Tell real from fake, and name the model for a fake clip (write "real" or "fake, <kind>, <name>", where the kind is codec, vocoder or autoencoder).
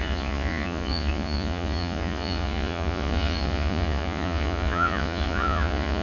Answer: fake, vocoder, Vocos